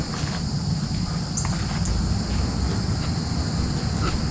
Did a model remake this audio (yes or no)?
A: no